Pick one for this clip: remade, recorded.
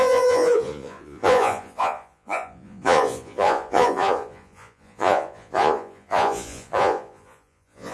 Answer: remade